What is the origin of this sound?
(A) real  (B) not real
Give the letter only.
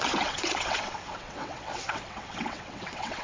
B